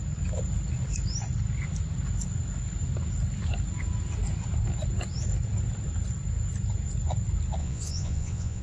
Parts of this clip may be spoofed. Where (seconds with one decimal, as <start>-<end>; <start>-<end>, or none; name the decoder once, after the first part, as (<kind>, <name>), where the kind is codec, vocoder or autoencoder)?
7.6-8.6 (vocoder, Vocos)

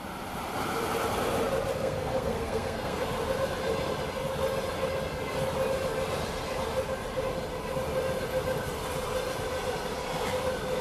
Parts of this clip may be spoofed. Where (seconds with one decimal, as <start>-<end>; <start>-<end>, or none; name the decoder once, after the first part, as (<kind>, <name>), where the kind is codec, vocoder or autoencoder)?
1.7-3.1 (codec, SNAC)

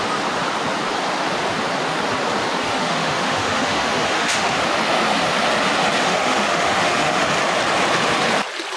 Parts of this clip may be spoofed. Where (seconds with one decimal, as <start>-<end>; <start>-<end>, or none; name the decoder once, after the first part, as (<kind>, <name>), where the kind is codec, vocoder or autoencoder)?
2.6-4.6 (autoencoder, DAC-VAE); 6.0-7.3

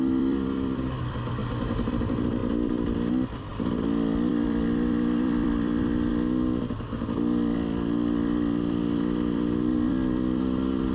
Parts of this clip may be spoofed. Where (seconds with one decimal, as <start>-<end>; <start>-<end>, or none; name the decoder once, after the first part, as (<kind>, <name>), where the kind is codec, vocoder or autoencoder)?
0.0-1.4 (vocoder, BigVGAN v2); 1.9-3.5; 4.3-10.9

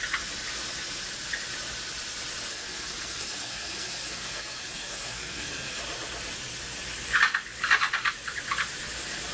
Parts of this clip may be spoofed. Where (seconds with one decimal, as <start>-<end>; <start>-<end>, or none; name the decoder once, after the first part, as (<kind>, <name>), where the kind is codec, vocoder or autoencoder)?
2.5-5.8 (codec, SNAC)

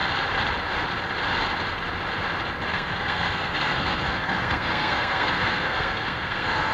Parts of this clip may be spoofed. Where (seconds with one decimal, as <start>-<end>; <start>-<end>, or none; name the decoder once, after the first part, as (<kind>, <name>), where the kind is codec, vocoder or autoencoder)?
2.7-6.7 (codec, SNAC)